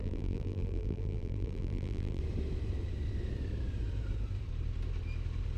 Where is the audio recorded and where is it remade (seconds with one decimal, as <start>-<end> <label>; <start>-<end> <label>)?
0.0-2.2 remade; 2.2-5.6 recorded